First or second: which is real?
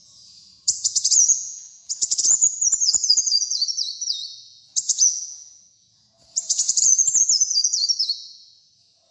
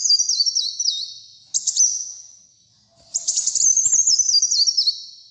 second